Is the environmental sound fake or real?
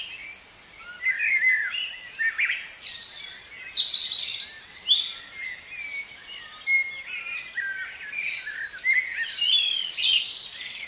real